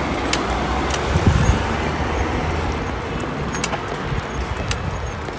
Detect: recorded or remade recorded